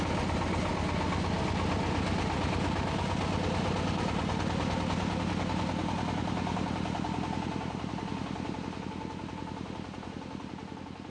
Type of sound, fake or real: real